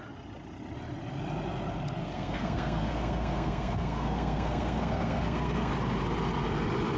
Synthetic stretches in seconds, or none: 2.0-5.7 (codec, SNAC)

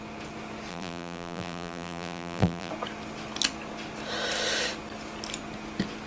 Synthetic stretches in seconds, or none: 0.7-2.7 (vocoder, BigVGAN v2)

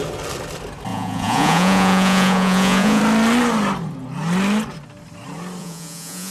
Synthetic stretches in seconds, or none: 0.9-3.0 (vocoder, Vocos); 5.6-6.3

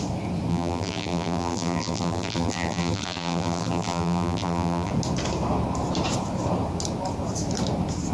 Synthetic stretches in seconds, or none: 0.5-4.9 (vocoder, BigVGAN v2)